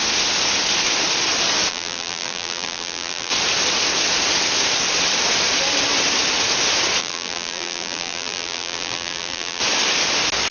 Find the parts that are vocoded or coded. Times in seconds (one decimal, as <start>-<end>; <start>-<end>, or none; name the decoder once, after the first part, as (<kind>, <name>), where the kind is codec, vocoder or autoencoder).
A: 1.7-3.3 (vocoder, BigVGAN v2); 7.0-9.6